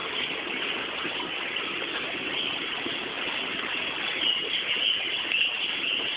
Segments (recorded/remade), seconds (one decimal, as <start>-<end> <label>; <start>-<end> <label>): 0.0-6.2 recorded